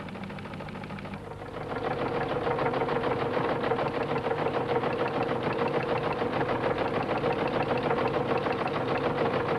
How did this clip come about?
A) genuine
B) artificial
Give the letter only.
A